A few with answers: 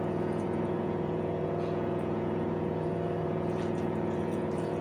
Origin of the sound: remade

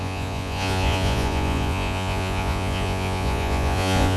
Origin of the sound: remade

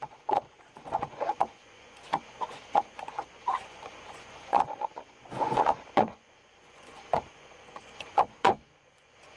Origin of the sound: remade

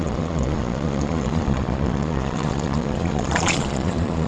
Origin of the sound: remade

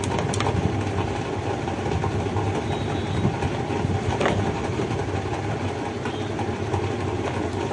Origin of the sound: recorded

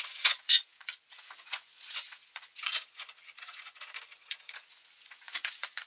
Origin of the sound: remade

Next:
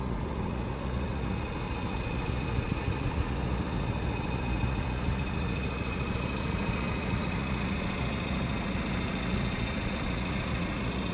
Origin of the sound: remade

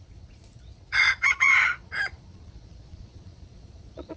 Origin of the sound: remade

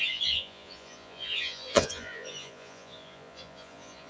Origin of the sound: remade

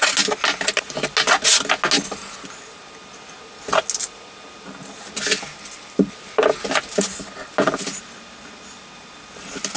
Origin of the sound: recorded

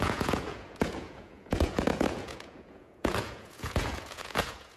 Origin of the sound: remade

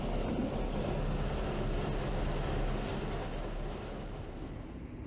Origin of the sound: recorded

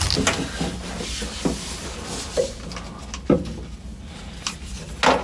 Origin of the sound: recorded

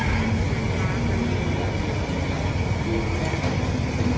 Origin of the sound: recorded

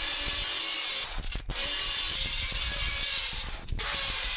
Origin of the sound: recorded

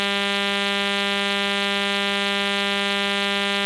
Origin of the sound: recorded